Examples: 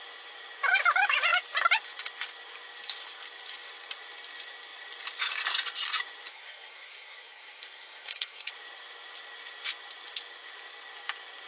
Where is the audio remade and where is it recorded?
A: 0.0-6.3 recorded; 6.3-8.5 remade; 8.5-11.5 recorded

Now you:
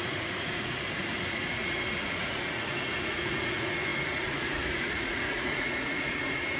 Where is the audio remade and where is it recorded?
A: 0.0-6.6 remade

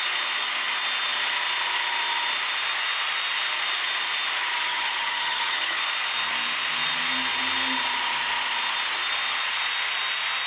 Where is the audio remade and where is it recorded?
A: 0.0-4.6 recorded; 4.6-5.8 remade; 5.8-10.5 recorded